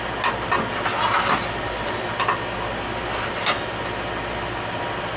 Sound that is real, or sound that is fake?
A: real